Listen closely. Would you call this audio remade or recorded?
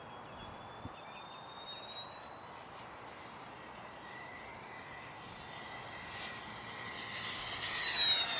recorded